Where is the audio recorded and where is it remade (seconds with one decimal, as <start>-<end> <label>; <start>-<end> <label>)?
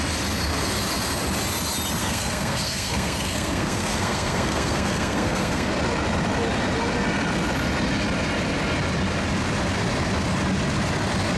0.0-2.0 recorded; 2.0-5.7 remade; 5.7-11.4 recorded